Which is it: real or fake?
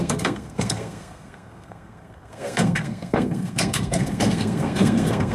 fake